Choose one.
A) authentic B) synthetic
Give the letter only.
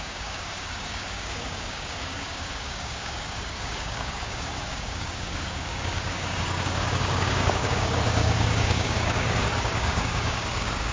B